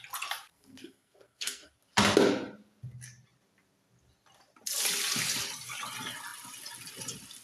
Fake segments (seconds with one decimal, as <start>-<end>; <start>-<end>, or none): 0.5-1.7